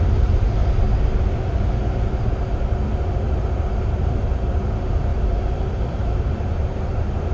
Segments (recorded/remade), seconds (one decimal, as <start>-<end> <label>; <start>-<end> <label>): 0.0-0.6 remade; 0.6-4.0 recorded; 4.0-5.1 remade; 5.1-5.7 recorded; 5.7-7.3 remade